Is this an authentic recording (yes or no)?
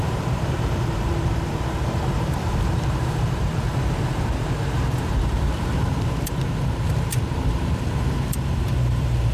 no